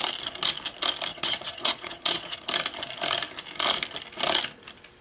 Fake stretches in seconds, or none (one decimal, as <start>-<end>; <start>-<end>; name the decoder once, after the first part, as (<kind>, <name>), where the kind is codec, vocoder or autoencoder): 1.1-2.4 (vocoder, Vocos)